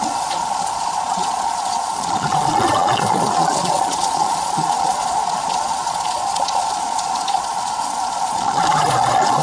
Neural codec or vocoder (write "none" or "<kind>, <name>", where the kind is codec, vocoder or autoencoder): vocoder, Vocos